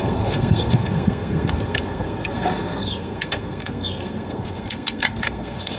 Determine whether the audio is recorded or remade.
remade